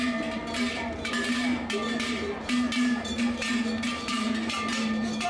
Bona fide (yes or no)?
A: no